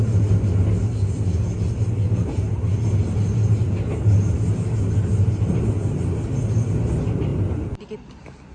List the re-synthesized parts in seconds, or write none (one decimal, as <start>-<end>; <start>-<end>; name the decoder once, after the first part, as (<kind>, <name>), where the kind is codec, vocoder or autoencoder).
none